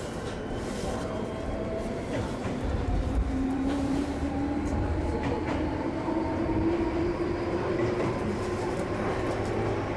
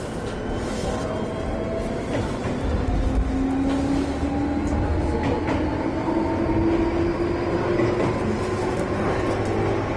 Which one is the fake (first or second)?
first